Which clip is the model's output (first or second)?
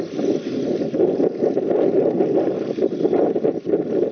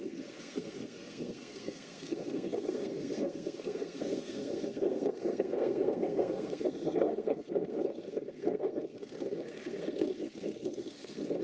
second